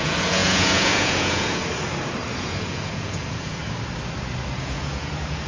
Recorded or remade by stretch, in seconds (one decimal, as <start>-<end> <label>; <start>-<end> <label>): 0.0-1.6 remade; 1.6-2.3 recorded; 2.3-3.6 remade; 3.6-4.6 recorded; 4.6-5.5 remade